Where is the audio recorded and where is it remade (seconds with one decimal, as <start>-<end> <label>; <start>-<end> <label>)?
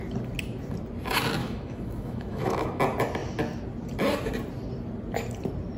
0.0-1.4 recorded; 1.4-2.8 remade; 2.8-5.8 recorded